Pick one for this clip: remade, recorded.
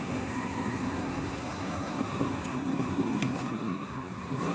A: remade